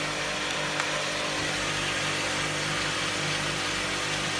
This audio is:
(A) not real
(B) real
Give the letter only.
B